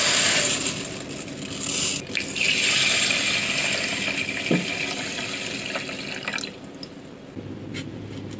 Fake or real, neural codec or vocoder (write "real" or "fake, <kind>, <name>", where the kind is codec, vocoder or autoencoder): real